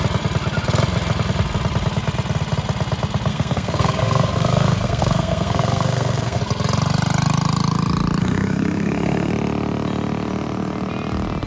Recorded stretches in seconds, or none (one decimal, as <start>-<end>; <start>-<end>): 0.0-3.3; 6.4-8.2; 9.3-11.5